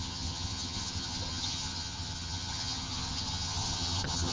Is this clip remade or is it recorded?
remade